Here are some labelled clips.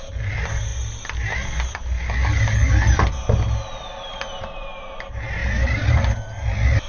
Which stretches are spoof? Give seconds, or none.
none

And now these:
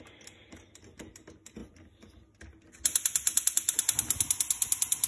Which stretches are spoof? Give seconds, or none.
none